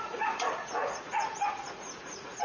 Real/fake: fake